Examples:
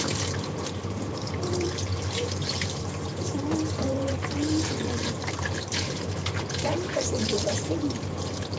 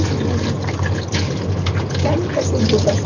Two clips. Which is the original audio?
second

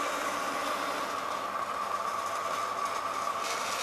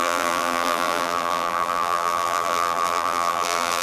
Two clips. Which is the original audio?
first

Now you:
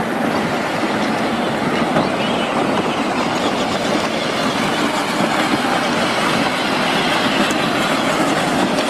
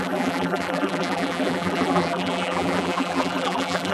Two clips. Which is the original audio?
first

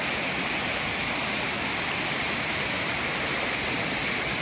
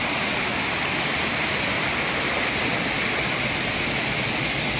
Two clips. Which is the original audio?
second